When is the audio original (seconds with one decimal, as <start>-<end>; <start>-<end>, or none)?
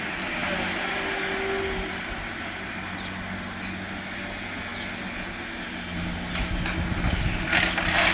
0.0-8.1